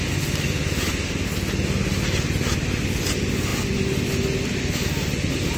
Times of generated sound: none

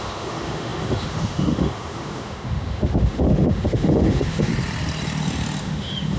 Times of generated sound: 0.0-4.5 (autoencoder, DAC-VAE); 5.6-6.2

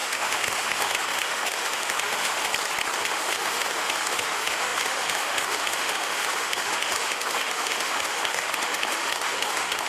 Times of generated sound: 0.0-2.5 (autoencoder, DAC-VAE); 3.0-9.9

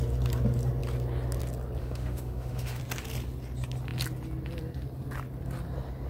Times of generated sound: 1.8-2.8 (autoencoder, DAC-VAE)

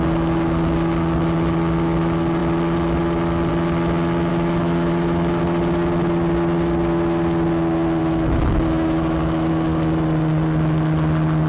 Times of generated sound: 4.3-5.4 (autoencoder, DAC-VAE); 8.0-9.5